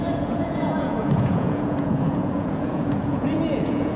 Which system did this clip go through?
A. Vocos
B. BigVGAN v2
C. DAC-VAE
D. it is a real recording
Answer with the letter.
A